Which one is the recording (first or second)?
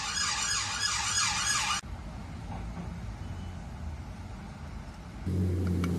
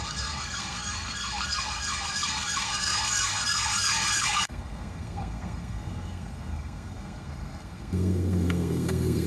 first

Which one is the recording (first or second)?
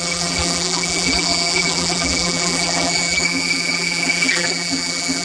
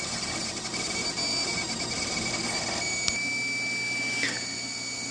second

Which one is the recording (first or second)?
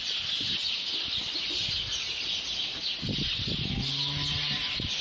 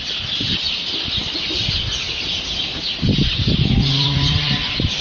first